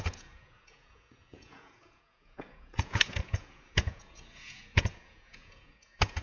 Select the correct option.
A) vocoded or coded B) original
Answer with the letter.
A